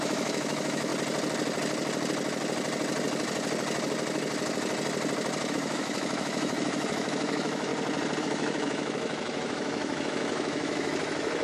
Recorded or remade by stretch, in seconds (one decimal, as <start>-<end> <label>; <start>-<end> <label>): 0.0-0.9 remade; 0.9-5.5 recorded; 5.5-7.7 remade; 7.7-8.2 recorded; 8.2-11.4 remade